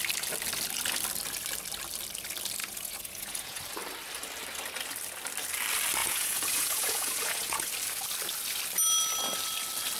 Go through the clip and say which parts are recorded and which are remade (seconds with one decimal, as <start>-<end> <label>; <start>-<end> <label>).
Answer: 0.0-2.6 recorded; 2.6-3.6 remade; 3.6-6.0 recorded; 6.0-7.7 remade; 7.7-10.0 recorded